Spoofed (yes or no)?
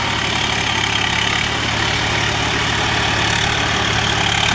no